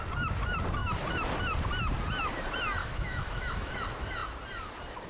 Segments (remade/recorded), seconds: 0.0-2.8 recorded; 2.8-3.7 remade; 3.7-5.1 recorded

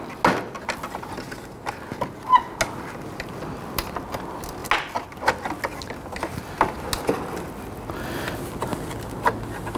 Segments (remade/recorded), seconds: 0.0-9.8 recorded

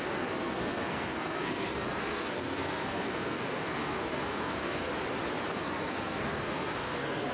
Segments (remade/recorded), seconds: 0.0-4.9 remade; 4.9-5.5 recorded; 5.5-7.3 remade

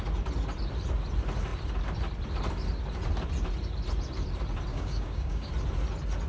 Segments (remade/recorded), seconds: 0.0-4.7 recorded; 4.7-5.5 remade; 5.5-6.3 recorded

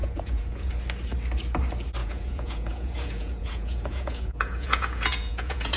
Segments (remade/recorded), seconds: 0.0-0.7 remade; 0.7-2.0 recorded; 2.0-5.8 remade